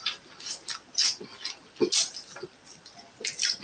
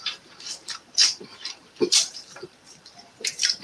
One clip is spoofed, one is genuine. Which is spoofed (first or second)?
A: second